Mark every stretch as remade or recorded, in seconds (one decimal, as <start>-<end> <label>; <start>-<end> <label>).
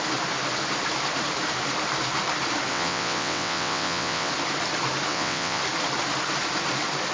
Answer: 0.0-2.7 recorded; 2.7-4.3 remade; 4.3-5.1 recorded; 5.1-5.6 remade; 5.6-7.1 recorded